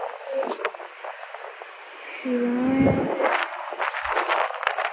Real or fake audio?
real